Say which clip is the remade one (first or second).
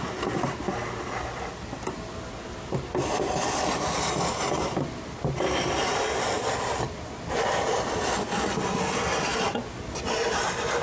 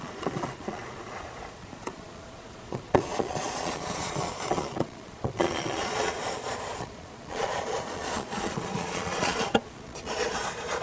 second